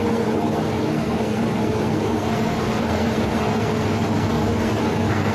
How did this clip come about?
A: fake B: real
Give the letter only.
A